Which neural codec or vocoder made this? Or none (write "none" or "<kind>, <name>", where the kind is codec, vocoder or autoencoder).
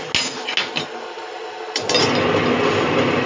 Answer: none